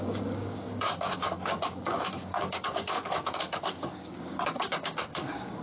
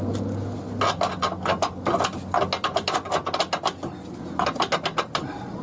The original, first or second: second